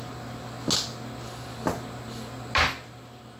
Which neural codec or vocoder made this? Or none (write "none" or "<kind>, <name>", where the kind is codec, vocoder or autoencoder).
none